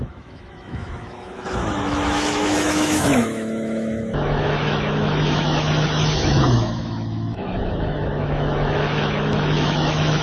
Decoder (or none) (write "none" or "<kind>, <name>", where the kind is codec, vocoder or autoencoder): autoencoder, DAC-VAE